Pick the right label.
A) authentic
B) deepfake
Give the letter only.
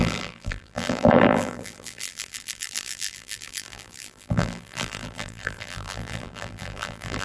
B